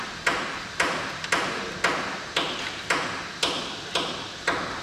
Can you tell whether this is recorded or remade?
recorded